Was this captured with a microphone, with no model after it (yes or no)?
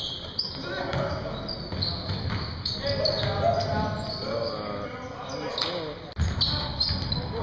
yes